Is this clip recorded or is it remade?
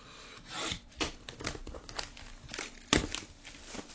recorded